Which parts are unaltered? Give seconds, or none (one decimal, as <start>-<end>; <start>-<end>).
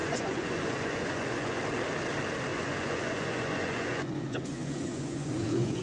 1.6-2.5